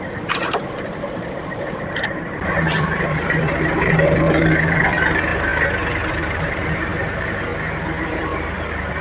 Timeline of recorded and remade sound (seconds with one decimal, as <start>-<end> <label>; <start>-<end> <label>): 0.0-5.3 remade; 5.3-6.1 recorded; 6.1-7.5 remade; 7.5-8.0 recorded; 8.0-9.0 remade